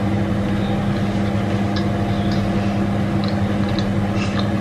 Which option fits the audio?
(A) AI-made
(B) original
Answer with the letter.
B